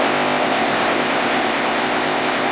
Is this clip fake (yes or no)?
yes